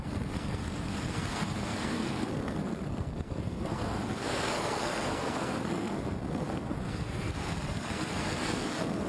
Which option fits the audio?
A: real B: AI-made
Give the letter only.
B